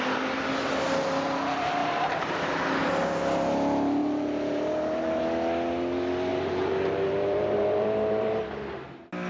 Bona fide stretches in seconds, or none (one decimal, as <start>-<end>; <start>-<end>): 0.0-1.8; 2.9-4.0; 5.2-6.3; 8.4-9.3